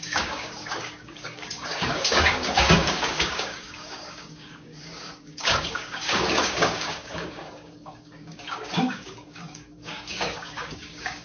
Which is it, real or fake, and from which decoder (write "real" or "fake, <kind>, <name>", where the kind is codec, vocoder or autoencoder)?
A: fake, codec, DAC